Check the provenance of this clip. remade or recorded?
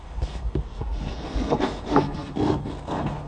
remade